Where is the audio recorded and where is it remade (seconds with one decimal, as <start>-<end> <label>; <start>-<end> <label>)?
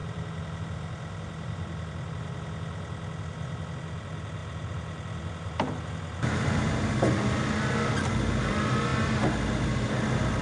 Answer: 0.0-10.4 recorded